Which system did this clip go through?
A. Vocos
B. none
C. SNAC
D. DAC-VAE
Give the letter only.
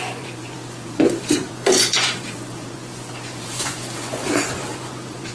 A